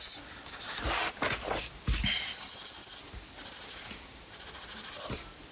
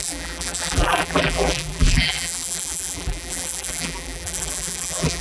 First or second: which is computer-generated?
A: second